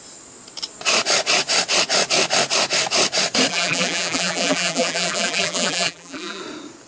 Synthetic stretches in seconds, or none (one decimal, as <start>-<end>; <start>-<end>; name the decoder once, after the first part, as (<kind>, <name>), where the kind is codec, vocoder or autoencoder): 3.5-6.4 (vocoder, BigVGAN v2)